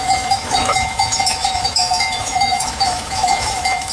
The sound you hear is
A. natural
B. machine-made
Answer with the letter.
B